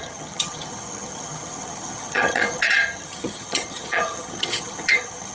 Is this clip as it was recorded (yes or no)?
no